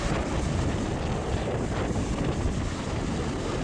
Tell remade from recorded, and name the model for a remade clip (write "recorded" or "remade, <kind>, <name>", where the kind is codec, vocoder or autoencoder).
recorded